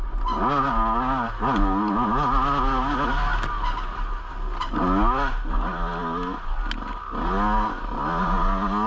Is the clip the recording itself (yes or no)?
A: yes